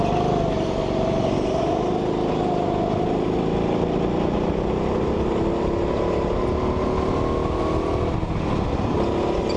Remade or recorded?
recorded